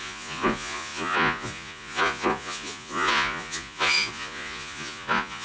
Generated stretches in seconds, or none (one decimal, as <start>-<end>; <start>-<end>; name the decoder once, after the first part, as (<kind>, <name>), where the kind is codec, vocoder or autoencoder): 0.0-5.4 (vocoder, Vocos)